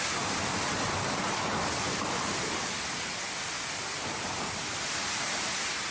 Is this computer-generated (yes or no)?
no